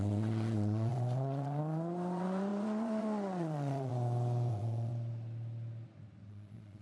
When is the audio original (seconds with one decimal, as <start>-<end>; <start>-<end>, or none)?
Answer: 3.9-4.5; 4.9-6.3